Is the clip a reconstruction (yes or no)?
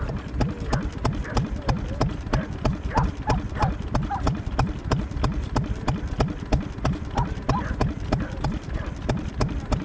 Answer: no